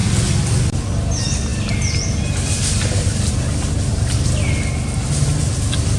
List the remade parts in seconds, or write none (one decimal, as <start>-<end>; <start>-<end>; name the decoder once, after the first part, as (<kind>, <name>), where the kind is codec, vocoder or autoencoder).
3.9-4.5 (vocoder, BigVGAN v2)